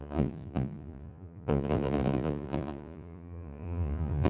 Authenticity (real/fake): fake